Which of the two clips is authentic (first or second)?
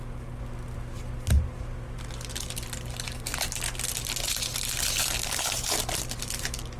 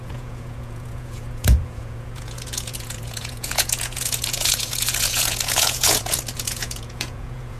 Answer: first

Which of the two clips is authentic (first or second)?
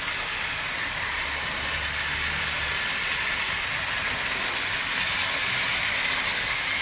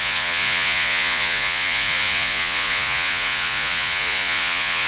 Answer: first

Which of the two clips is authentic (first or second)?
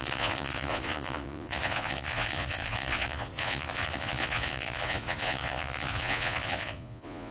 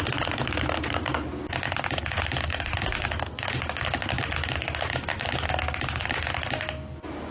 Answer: second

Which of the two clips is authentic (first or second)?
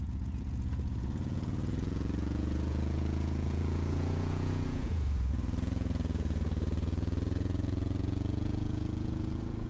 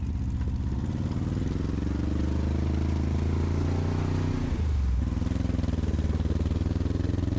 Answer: second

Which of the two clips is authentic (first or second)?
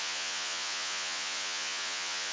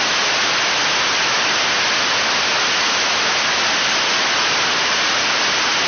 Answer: second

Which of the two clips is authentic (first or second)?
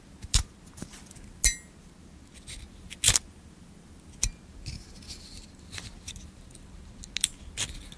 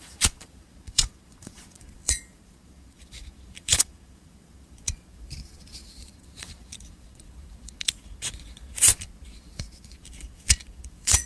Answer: first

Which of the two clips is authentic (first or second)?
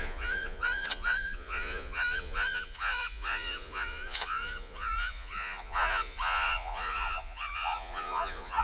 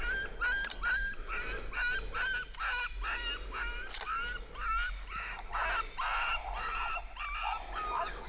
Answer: second